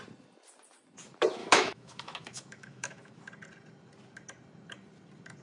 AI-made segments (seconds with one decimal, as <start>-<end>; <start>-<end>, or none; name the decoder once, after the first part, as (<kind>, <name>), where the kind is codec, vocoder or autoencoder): 1.4-3.1 (autoencoder, DAC-VAE)

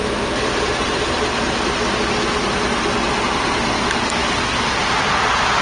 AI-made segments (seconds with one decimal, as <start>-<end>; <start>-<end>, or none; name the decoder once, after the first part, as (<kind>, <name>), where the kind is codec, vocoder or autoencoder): none

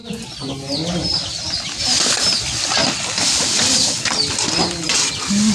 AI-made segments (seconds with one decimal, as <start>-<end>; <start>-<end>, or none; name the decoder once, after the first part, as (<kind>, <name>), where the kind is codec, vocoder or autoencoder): none